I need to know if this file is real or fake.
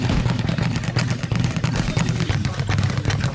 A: real